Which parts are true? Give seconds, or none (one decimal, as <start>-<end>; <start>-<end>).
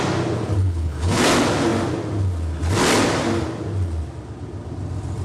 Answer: 0.0-0.6; 1.2-5.2